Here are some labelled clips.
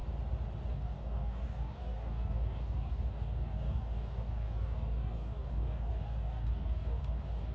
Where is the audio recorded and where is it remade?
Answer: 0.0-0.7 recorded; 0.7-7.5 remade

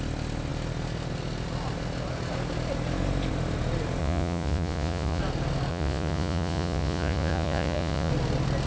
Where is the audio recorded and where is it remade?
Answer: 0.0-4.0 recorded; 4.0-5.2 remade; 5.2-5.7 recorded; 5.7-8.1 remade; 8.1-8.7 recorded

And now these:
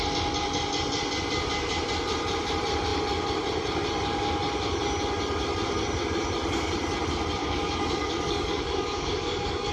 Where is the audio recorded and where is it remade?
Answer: 0.0-7.4 recorded; 7.4-9.7 remade

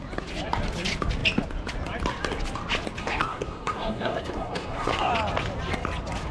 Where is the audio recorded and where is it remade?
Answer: 0.0-3.0 recorded; 3.0-5.1 remade; 5.1-6.3 recorded

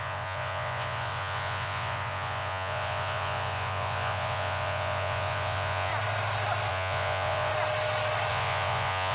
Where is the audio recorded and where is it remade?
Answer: 0.0-5.9 remade; 5.9-6.7 recorded; 6.7-7.5 remade; 7.5-8.3 recorded; 8.3-9.1 remade

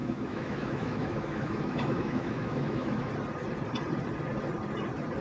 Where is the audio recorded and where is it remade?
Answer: 0.0-3.1 remade; 3.1-5.2 recorded